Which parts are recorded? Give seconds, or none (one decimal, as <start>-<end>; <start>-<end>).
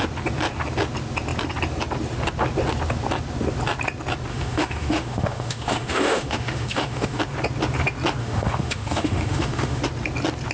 0.0-4.3; 7.2-8.2; 9.8-10.5